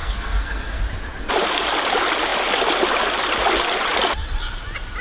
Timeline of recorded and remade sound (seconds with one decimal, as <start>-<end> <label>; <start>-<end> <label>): 0.0-0.8 remade; 0.8-5.0 recorded